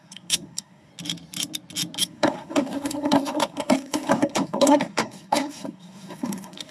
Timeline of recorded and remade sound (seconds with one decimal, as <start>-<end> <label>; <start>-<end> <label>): 0.0-0.9 remade; 0.9-2.0 recorded; 2.0-6.7 remade